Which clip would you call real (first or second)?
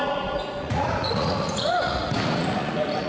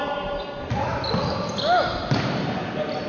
second